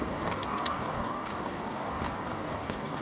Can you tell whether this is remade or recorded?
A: remade